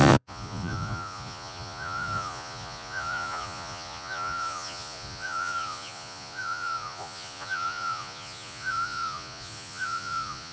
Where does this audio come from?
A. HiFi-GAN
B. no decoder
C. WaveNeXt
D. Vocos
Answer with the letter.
D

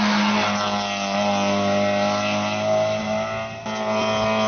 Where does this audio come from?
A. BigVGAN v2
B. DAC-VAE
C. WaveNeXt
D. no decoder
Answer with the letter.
D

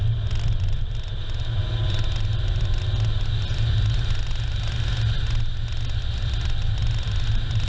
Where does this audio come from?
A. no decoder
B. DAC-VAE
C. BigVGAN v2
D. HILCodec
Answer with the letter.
A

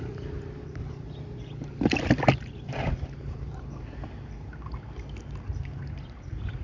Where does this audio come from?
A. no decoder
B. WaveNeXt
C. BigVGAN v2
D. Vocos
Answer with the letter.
C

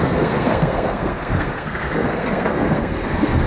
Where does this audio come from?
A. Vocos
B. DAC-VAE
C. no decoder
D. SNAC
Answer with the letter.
D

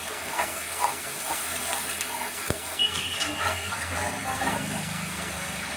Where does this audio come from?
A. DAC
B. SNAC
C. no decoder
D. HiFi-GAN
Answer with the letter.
B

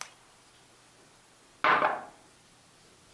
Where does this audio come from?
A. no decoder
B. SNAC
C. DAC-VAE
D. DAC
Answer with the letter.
A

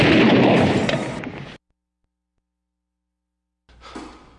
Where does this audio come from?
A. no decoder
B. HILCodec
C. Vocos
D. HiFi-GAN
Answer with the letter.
A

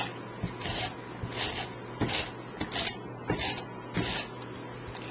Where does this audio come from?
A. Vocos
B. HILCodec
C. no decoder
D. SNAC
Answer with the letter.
C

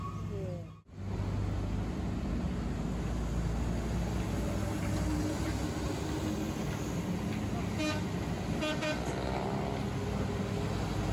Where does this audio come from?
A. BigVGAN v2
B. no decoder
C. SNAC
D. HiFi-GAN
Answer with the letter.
B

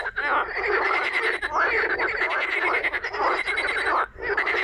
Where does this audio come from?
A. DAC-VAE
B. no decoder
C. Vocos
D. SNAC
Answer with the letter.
B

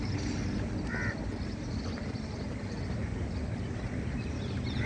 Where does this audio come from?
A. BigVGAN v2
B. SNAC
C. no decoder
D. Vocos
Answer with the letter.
C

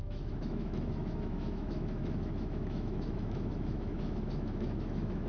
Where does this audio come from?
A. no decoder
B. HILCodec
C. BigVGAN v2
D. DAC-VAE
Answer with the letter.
D